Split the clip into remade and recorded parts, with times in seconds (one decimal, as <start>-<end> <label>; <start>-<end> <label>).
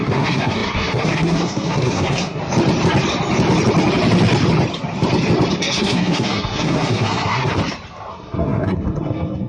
0.0-2.4 remade; 2.4-5.6 recorded; 5.6-7.6 remade; 7.6-8.1 recorded; 8.1-9.5 remade